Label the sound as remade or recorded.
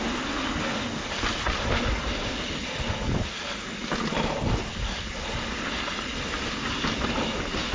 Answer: recorded